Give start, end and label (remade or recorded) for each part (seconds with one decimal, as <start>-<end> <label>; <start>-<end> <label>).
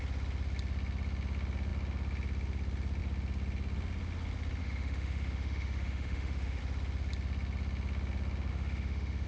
0.0-4.6 recorded; 4.6-6.6 remade; 6.6-8.5 recorded; 8.5-9.3 remade